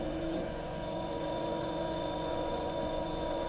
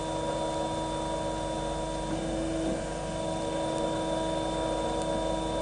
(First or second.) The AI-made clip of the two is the first